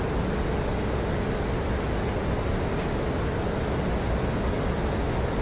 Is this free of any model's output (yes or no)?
yes